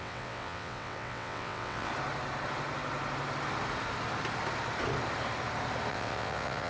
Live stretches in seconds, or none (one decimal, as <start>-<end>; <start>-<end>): 1.9-5.9

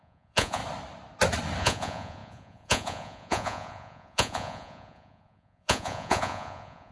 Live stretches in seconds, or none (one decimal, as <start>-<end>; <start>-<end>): 0.6-1.6

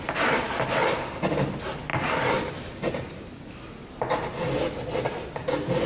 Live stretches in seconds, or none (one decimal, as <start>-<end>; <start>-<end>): 0.0-5.9

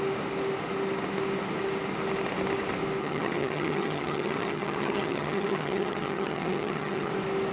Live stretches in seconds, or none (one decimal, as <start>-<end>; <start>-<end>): 0.0-3.0; 7.1-7.5

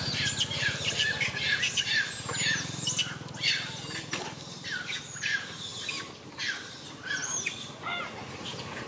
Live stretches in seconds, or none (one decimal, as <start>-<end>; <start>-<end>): 0.0-8.9

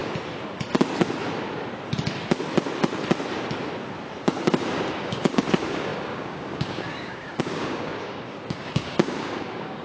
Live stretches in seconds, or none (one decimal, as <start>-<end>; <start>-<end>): 0.0-4.2